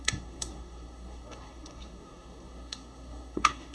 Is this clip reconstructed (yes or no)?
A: yes